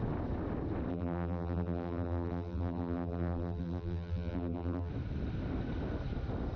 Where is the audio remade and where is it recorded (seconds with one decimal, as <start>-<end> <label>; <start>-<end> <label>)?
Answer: 0.0-0.9 recorded; 0.9-4.9 remade; 4.9-6.6 recorded